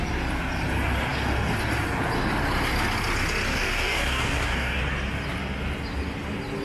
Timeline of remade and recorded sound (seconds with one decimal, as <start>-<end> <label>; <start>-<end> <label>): 0.0-3.5 recorded; 3.5-4.8 remade; 4.8-6.6 recorded